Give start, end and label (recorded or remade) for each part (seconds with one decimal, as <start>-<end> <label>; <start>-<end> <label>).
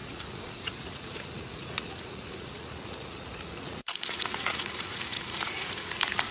0.0-6.3 remade